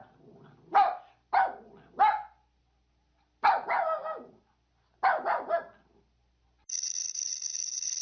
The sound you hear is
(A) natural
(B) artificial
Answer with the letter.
A